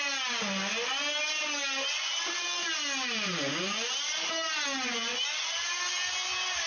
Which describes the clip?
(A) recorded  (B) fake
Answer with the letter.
A